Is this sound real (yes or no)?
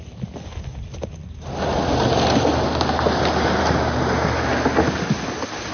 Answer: yes